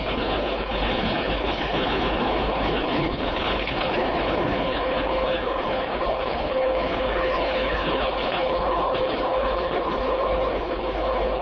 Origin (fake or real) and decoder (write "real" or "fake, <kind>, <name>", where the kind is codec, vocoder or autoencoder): fake, codec, HILCodec